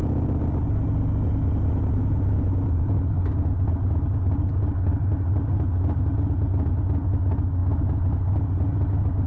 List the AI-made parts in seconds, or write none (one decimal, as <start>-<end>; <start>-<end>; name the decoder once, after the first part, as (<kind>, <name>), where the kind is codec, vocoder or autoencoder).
none